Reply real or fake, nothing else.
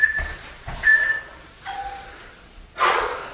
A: fake